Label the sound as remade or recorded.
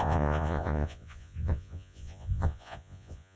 remade